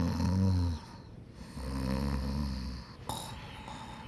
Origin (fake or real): real